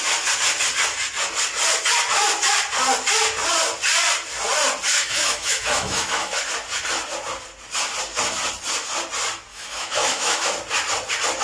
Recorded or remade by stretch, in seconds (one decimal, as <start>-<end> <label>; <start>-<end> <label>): 0.0-4.9 recorded; 4.9-6.3 remade; 6.3-9.5 recorded; 9.5-10.5 remade; 10.5-11.4 recorded